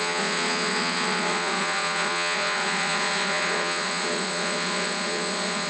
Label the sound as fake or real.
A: fake